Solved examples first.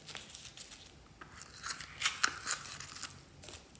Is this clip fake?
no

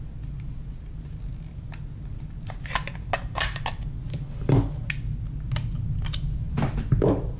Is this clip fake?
no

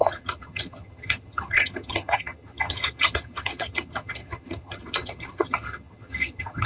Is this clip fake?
yes